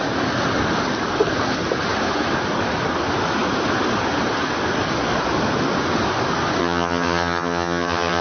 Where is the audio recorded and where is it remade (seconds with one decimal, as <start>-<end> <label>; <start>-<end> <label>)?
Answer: 0.0-6.6 recorded; 6.6-8.2 remade